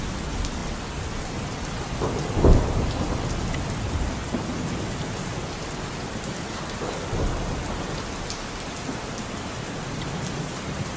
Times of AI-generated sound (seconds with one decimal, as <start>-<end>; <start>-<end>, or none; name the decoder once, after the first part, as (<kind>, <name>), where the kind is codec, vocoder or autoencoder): none